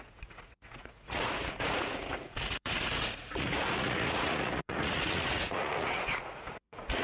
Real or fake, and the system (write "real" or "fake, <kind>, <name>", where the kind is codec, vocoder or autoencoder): fake, vocoder, Vocos